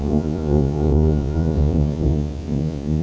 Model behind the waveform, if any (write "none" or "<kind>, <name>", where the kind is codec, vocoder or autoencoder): vocoder, Vocos